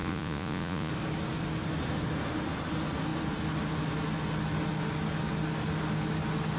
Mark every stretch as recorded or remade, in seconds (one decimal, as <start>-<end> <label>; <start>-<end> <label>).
0.0-0.9 remade; 0.9-6.6 recorded